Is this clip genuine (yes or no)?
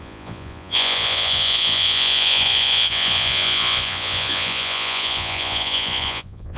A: no